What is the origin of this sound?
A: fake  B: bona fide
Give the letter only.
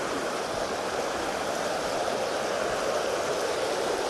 B